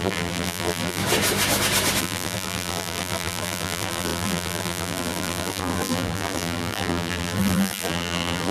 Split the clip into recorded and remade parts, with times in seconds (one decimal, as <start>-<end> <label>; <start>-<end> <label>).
0.0-1.0 remade; 1.0-2.0 recorded; 2.0-8.5 remade